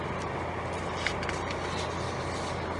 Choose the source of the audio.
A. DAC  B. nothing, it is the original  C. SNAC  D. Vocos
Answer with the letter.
B